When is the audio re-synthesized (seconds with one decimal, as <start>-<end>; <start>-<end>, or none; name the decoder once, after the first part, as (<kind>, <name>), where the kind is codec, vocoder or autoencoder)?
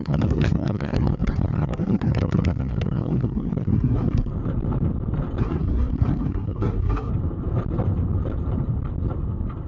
0.0-4.3 (codec, SNAC); 5.4-7.1